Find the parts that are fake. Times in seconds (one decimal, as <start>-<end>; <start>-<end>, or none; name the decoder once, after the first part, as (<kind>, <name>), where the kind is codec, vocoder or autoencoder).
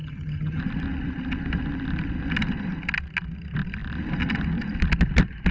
0.0-0.6 (vocoder, HiFi-GAN)